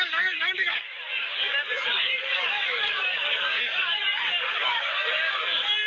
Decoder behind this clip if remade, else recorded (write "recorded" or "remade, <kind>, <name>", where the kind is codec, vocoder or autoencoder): remade, codec, DAC